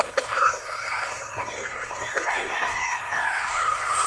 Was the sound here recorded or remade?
remade